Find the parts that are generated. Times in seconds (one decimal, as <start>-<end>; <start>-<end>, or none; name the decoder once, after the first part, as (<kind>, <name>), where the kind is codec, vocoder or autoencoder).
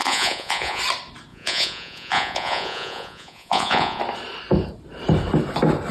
0.0-0.8 (vocoder, Vocos); 1.3-4.0